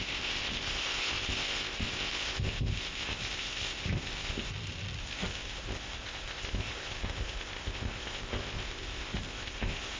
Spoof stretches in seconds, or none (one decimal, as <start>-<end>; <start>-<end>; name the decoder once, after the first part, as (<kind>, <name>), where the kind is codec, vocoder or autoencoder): 0.0-4.5 (codec, ZipCodec); 5.0-10.0

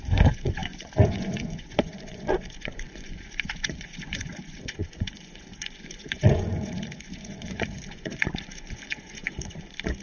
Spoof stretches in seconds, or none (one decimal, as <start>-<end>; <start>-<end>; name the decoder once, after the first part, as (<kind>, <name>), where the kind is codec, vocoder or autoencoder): 0.0-10.0 (vocoder, Vocos)

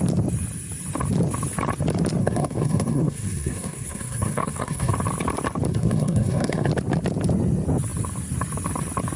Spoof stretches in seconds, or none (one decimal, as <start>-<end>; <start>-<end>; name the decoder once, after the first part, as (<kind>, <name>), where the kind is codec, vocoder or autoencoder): 2.2-4.9 (codec, SNAC); 5.7-6.7

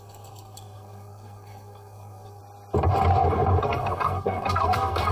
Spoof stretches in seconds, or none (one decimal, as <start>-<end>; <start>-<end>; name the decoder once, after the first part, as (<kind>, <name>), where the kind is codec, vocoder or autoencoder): 0.0-2.4 (codec, SNAC); 3.6-5.1